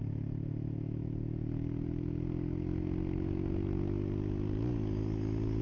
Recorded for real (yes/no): yes